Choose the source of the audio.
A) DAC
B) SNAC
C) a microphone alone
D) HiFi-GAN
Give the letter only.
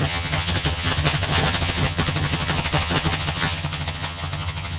D